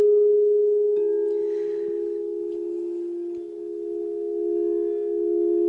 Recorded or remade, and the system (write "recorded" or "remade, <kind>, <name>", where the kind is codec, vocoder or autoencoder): recorded